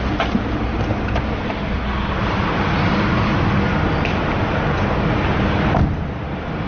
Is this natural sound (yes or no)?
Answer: yes